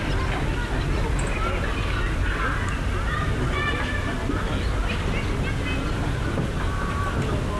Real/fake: real